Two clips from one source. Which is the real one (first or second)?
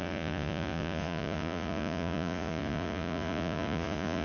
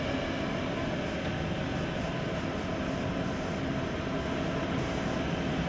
second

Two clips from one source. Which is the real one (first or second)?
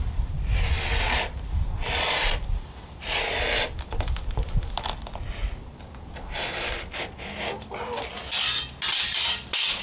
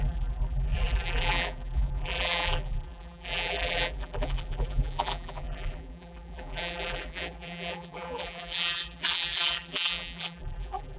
first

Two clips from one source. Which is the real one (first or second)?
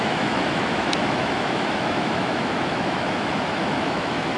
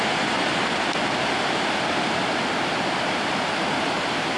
second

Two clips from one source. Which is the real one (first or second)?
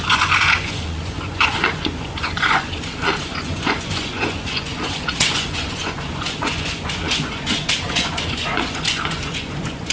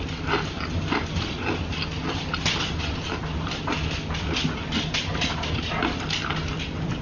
second